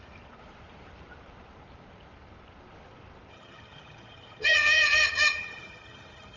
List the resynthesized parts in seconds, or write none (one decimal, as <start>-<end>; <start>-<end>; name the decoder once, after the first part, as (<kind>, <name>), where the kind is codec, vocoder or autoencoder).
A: 3.3-6.4 (vocoder, HiFi-GAN)